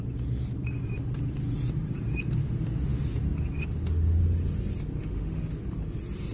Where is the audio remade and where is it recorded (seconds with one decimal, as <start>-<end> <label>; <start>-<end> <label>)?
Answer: 0.0-2.4 recorded; 2.4-3.0 remade; 3.0-3.6 recorded; 3.6-4.2 remade; 4.2-5.0 recorded; 5.0-5.6 remade; 5.6-6.3 recorded